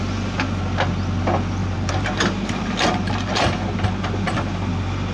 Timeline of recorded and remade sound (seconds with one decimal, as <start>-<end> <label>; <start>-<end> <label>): 0.0-1.6 recorded; 1.6-2.6 remade; 2.6-5.1 recorded